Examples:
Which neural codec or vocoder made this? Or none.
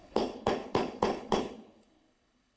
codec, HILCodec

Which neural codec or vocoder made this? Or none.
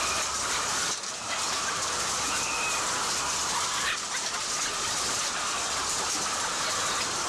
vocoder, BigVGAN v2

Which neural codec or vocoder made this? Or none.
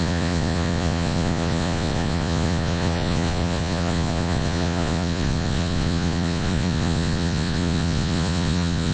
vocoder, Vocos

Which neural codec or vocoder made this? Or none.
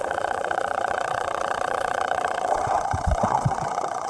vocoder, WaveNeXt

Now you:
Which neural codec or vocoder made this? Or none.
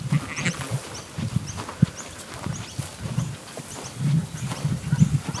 none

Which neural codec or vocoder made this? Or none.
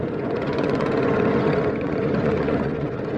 vocoder, Vocos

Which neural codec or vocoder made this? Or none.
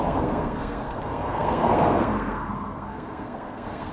codec, SNAC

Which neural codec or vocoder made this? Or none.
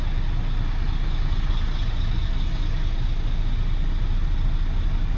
none